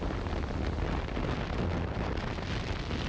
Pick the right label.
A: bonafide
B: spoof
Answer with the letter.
A